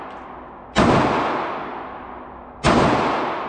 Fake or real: real